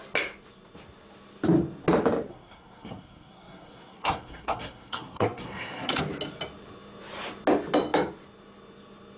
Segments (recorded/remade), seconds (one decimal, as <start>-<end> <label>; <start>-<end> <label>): 0.0-2.3 recorded; 2.3-6.0 remade; 6.0-9.2 recorded